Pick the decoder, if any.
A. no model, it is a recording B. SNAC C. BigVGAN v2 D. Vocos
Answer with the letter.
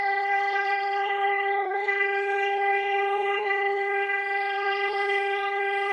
B